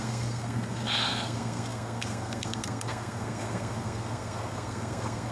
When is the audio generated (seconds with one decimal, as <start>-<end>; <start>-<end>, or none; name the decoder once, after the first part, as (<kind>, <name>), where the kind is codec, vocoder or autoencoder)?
0.0-5.3 (codec, SNAC)